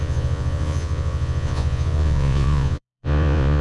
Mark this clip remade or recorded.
remade